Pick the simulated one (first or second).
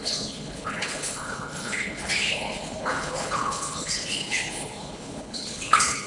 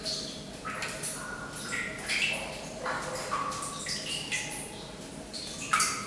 first